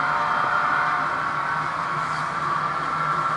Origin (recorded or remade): recorded